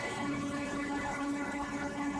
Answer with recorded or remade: remade